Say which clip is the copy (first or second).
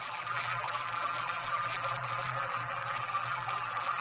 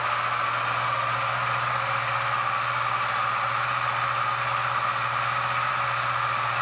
first